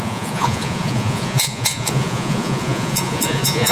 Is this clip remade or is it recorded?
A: remade